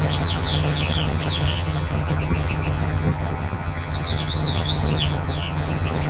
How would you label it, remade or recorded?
remade